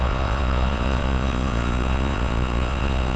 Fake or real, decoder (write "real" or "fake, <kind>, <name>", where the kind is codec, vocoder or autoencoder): fake, vocoder, Vocos